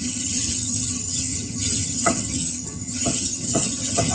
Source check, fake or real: fake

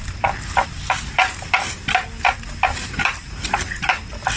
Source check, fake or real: real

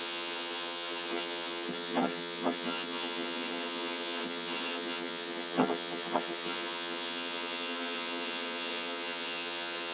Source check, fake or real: fake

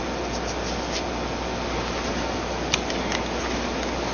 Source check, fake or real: real